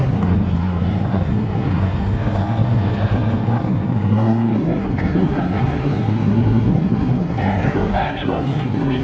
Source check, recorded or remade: remade